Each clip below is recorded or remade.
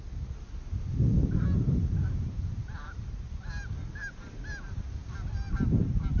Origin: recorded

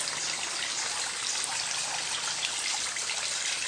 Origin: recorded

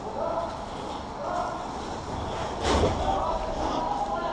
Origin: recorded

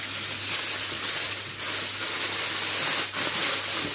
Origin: recorded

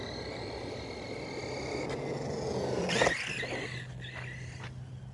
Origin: recorded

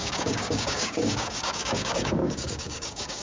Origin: remade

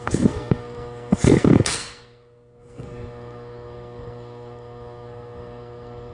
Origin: remade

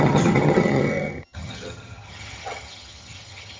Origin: remade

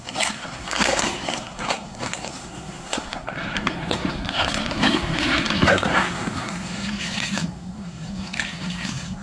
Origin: remade